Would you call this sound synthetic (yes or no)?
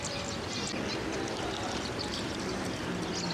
no